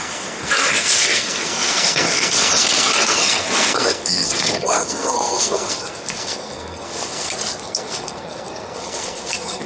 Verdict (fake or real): fake